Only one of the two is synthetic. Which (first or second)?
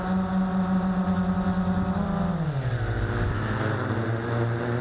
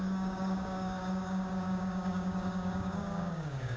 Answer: second